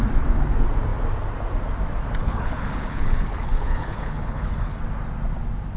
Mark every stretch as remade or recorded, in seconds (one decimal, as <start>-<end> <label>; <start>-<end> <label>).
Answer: 0.0-2.2 recorded; 2.2-4.8 remade; 4.8-5.8 recorded